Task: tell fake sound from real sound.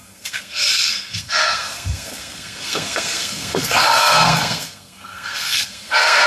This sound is fake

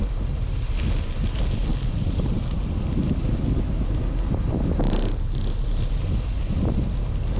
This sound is real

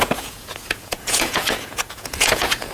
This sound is fake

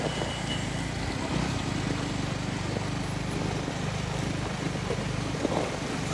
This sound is real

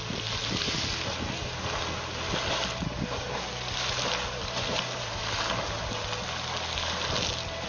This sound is real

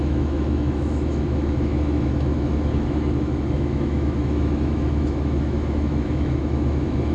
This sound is fake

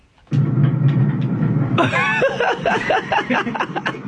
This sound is real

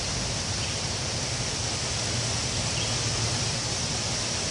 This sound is real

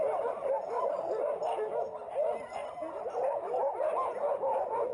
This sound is real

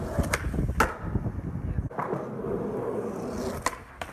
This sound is real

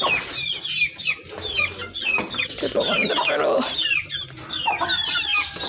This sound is real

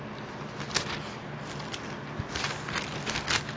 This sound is real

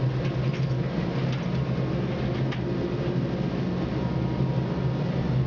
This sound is real